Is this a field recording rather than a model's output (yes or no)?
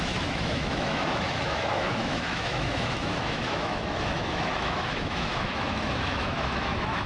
no